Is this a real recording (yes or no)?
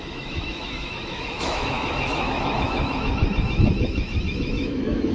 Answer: no